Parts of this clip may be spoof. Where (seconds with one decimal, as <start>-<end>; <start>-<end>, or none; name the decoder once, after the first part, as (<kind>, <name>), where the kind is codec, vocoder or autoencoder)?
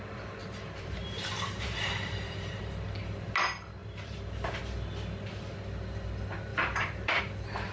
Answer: 0.4-2.6 (vocoder, BigVGAN v2); 3.8-4.6; 6.5-7.2